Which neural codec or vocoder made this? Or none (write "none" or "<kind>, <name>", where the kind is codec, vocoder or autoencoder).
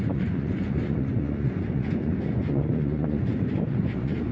vocoder, Vocos